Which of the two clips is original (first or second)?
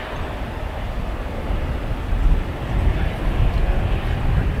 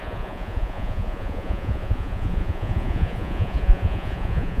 first